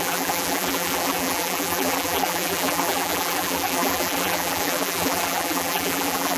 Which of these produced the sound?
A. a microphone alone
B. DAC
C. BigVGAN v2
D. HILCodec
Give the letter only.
C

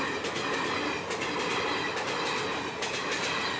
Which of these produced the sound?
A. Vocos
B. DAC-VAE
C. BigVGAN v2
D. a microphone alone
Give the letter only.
D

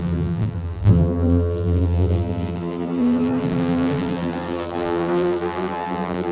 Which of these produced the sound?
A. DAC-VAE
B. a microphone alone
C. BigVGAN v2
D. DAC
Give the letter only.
C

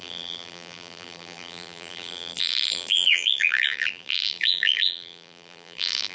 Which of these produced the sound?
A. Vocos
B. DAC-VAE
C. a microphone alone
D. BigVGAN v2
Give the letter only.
D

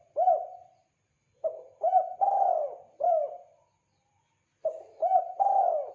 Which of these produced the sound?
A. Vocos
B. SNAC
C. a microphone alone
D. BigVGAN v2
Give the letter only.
C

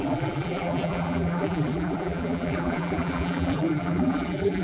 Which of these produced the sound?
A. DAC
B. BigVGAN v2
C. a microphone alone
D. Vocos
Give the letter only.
B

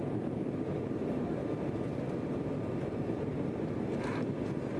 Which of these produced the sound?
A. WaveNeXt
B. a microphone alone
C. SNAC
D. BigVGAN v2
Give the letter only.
D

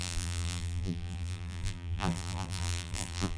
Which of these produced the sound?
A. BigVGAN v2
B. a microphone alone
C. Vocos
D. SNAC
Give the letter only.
A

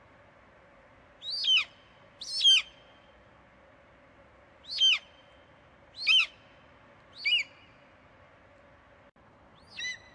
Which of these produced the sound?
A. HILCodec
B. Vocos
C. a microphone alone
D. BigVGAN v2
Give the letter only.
C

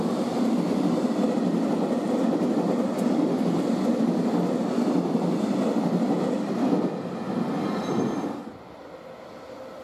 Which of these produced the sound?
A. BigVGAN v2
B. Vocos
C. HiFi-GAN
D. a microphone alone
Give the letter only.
D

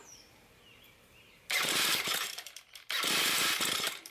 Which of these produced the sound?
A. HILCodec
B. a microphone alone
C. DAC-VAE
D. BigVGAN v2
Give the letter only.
D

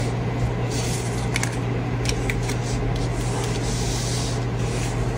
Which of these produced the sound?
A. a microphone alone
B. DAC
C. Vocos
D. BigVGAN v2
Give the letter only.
A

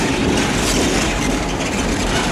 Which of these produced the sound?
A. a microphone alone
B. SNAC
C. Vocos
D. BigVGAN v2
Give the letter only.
D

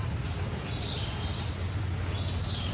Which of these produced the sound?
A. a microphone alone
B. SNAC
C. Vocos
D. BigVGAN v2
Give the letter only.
A